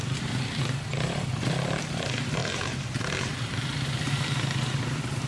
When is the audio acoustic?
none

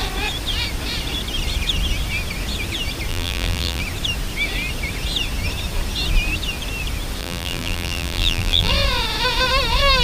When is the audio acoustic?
0.0-3.1; 3.8-7.2; 8.7-10.0